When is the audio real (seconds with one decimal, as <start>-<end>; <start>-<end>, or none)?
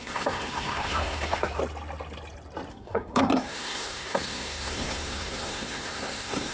1.6-2.7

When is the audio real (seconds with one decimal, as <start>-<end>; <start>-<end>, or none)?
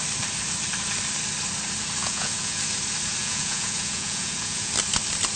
0.0-2.0; 2.6-3.2; 4.7-5.4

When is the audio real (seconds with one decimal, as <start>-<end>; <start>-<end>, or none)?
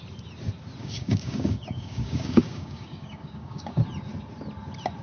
0.0-0.8; 3.8-5.0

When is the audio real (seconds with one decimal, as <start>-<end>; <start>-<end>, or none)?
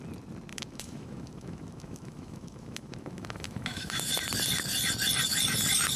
0.0-0.5; 4.1-6.0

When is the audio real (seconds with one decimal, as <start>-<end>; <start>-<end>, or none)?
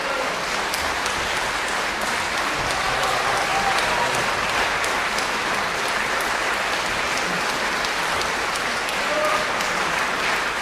0.0-10.6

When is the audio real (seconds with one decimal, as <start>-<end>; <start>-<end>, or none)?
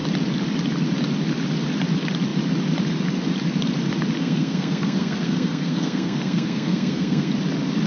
0.0-4.2; 7.3-7.9